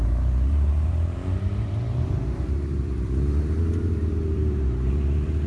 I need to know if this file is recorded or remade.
remade